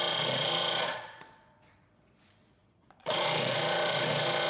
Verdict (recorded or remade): remade